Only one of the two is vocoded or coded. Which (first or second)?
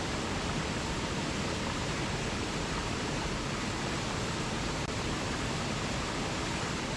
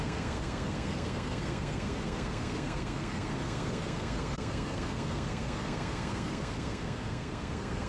second